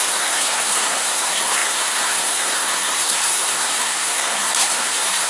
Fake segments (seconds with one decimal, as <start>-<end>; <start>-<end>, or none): 0.0-5.3